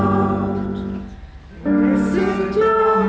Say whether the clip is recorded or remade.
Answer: recorded